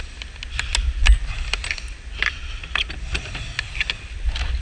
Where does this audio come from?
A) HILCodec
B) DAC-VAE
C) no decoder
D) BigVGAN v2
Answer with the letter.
C